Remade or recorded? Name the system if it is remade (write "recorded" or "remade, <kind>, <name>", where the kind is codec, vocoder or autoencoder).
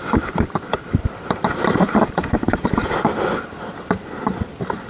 remade, vocoder, BigVGAN v2